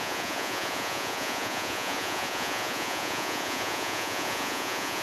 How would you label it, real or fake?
fake